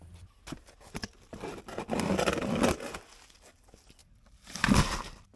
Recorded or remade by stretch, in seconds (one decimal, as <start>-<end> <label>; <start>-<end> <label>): 0.0-5.4 recorded

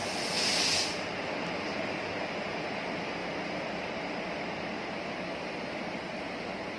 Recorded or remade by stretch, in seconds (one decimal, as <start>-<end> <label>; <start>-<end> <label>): 0.0-6.8 recorded

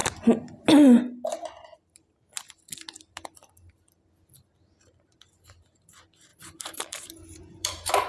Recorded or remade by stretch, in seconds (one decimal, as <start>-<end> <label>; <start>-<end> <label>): 0.0-6.3 recorded; 6.3-8.1 remade

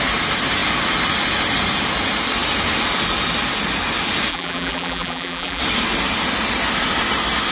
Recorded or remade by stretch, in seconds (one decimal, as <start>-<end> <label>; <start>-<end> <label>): 0.0-4.3 recorded; 4.3-5.6 remade; 5.6-7.5 recorded

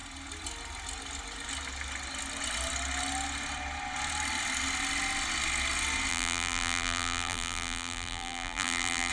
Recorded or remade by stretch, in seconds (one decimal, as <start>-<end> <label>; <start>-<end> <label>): 0.0-6.1 recorded; 6.1-9.1 remade

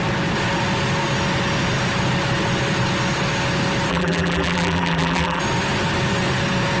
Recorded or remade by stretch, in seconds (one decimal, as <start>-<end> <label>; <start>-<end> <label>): 0.0-3.9 recorded; 3.9-5.4 remade; 5.4-6.8 recorded

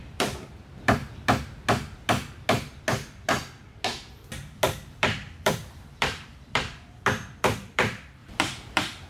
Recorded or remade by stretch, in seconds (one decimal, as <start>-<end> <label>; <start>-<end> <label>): 0.0-1.0 remade; 1.0-4.9 recorded; 4.9-9.1 remade

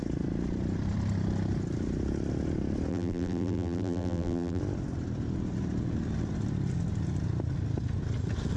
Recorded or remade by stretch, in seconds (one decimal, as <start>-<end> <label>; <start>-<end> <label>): 0.0-2.9 recorded; 2.9-4.6 remade; 4.6-8.6 recorded